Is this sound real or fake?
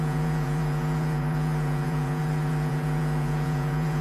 fake